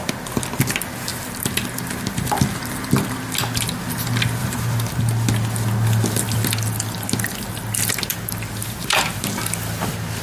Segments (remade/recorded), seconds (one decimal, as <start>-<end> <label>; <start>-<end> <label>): 0.0-1.1 recorded; 1.1-2.3 remade; 2.3-4.4 recorded; 4.4-5.0 remade; 5.0-8.6 recorded; 8.6-9.2 remade; 9.2-10.2 recorded